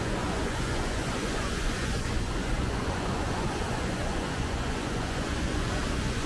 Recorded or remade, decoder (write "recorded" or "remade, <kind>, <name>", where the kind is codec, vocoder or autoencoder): remade, vocoder, Vocos